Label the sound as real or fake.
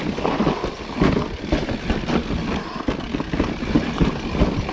real